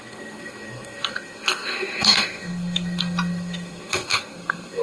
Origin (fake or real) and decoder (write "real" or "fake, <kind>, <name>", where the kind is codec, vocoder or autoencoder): fake, codec, SNAC